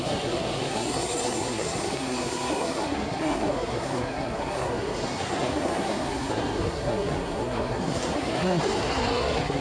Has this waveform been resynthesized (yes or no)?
yes